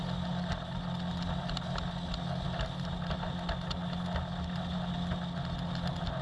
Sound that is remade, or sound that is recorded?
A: recorded